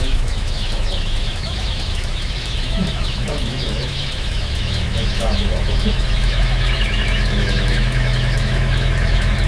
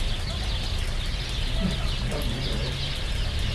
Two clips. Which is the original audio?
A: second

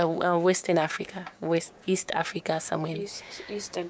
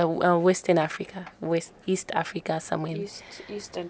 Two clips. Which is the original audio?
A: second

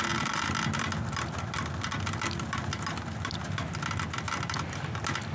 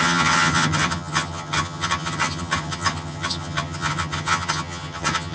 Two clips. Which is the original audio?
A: first